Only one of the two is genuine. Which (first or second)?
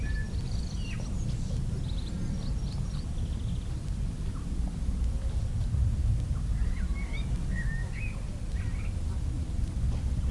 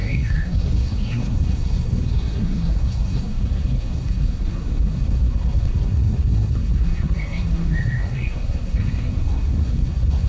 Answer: first